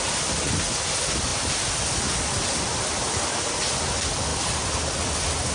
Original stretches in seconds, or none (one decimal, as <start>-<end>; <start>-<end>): 0.0-5.5